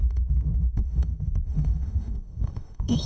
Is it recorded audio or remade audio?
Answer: remade